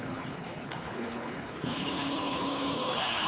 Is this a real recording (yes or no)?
no